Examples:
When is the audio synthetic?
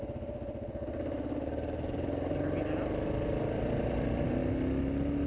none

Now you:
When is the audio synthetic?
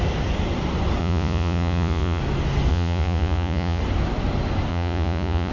1.0-2.2 (vocoder, Vocos); 2.7-3.8; 4.7-5.5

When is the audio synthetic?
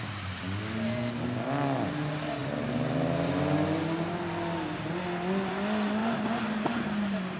6.0-7.4 (vocoder, BigVGAN v2)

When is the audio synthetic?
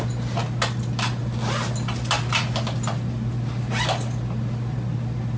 none